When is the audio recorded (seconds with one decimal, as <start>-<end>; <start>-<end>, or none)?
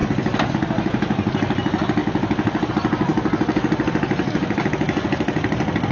0.0-5.9